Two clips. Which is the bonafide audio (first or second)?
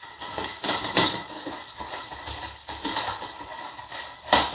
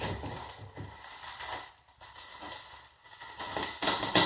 second